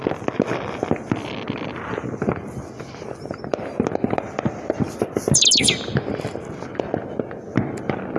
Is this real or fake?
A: real